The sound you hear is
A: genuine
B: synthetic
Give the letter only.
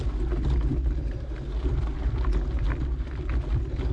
A